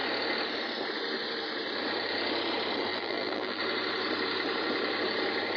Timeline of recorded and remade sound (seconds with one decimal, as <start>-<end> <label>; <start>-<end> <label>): 0.0-2.9 recorded; 2.9-3.6 remade; 3.6-5.6 recorded